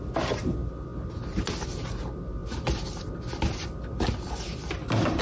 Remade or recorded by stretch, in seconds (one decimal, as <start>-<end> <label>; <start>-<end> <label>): 0.0-5.2 recorded

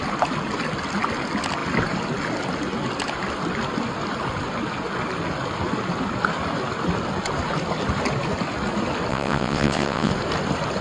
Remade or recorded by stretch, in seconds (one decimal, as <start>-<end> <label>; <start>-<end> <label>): 0.0-9.1 recorded; 9.1-10.1 remade; 10.1-10.8 recorded

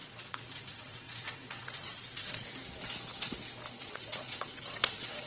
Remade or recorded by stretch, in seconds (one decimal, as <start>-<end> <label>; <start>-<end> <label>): 0.0-2.6 remade; 2.6-3.8 recorded; 3.8-5.3 remade

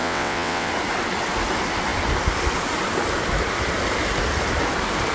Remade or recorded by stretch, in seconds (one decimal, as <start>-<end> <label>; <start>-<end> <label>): 0.0-0.7 remade; 0.7-5.1 recorded

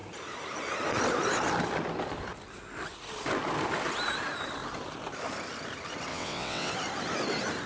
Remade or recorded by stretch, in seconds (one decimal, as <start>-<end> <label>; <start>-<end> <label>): 0.0-6.1 recorded; 6.1-6.7 remade; 6.7-7.7 recorded

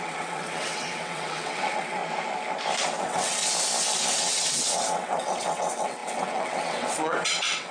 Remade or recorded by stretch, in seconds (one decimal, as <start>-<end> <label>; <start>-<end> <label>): 0.0-2.0 remade; 2.0-3.0 recorded; 3.0-3.4 remade; 3.4-4.1 recorded; 4.1-7.7 remade

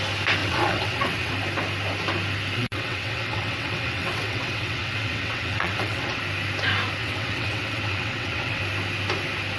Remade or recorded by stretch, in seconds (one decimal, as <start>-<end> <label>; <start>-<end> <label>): 0.0-0.4 recorded; 0.4-1.3 remade; 1.3-2.6 recorded; 2.6-6.2 remade; 6.2-7.0 recorded; 7.0-8.6 remade; 8.6-9.6 recorded